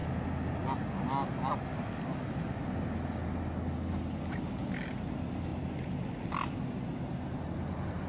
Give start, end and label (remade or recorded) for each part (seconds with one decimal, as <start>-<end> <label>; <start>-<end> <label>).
0.0-8.1 recorded